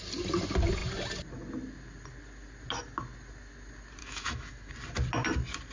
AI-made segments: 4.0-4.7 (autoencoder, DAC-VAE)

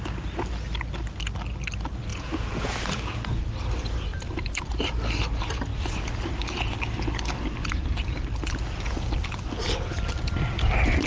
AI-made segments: 2.1-2.7 (vocoder, Vocos)

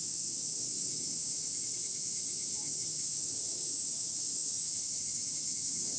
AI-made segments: 0.0-6.0 (autoencoder, DAC-VAE)

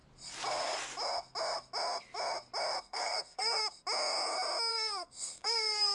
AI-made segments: 2.8-3.6 (codec, SNAC); 4.7-5.9

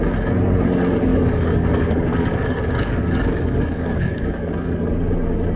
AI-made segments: 1.1-4.5 (codec, DAC)

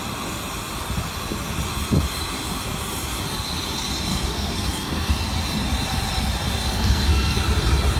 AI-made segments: 4.1-5.1 (codec, SNAC); 6.6-7.4